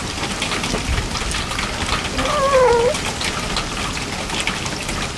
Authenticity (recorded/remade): recorded